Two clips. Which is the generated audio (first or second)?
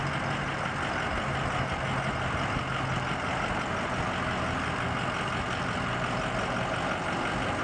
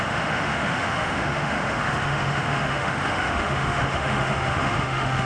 second